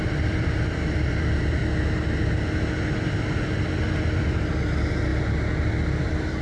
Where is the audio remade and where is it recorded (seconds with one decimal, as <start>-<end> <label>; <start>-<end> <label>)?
0.0-1.6 remade; 1.6-4.0 recorded; 4.0-5.1 remade; 5.1-6.0 recorded; 6.0-6.4 remade